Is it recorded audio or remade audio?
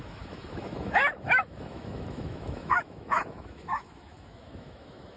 remade